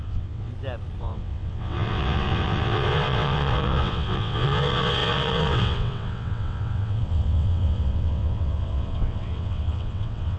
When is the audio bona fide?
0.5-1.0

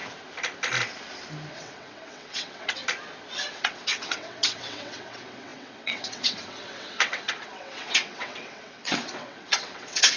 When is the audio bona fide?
0.0-1.5; 2.8-3.5